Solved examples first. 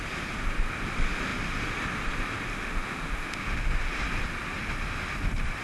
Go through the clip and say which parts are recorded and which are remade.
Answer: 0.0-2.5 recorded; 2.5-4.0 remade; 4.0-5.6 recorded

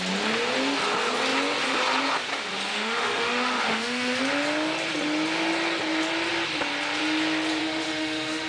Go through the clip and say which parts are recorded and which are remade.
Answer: 0.0-2.7 recorded; 2.7-4.2 remade; 4.2-7.6 recorded; 7.6-8.5 remade

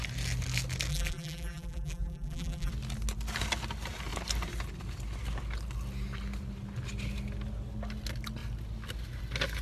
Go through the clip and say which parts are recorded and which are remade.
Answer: 0.0-0.9 recorded; 0.9-2.7 remade; 2.7-9.6 recorded